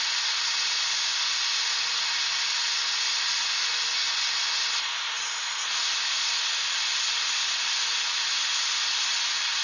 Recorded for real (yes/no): yes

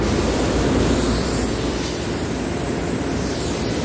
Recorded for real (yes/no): no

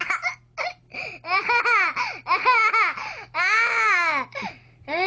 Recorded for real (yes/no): yes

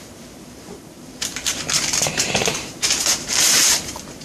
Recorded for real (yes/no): no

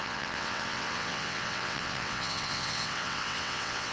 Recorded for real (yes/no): no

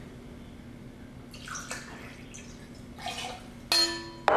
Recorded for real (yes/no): yes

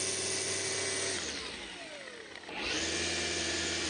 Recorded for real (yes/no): yes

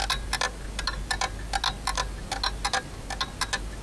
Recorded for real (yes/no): yes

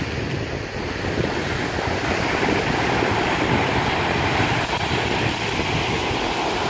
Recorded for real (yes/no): yes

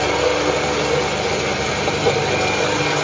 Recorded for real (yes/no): yes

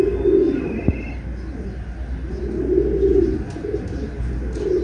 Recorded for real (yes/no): yes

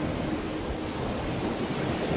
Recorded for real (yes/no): yes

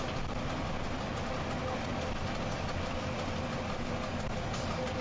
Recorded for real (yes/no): yes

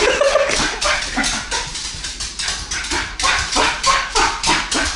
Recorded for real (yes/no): no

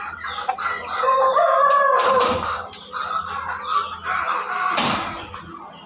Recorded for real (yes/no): yes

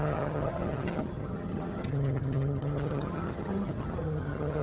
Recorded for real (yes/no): no